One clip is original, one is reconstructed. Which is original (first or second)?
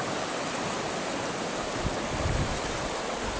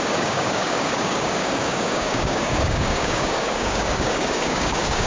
first